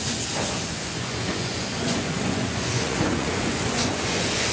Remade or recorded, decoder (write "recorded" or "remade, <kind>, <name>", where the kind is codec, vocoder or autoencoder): remade, vocoder, Vocos